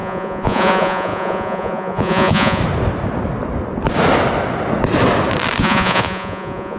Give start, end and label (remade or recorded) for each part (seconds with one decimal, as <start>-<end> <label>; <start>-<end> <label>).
0.0-2.6 remade; 2.6-5.6 recorded; 5.6-6.8 remade